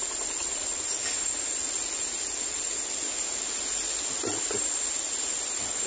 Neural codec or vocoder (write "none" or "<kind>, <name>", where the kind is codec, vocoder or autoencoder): none